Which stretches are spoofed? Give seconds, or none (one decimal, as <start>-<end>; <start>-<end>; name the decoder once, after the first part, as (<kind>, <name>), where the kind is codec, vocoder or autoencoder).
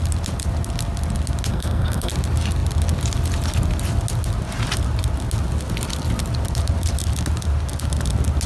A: 1.5-2.1 (codec, SNAC)